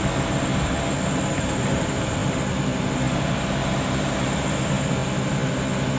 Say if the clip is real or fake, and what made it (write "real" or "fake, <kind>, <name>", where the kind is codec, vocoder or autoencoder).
real